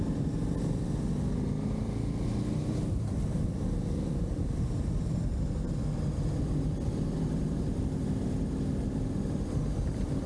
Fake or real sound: real